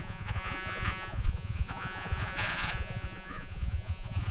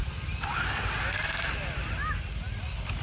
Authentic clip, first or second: second